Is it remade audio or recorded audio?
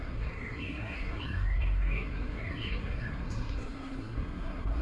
remade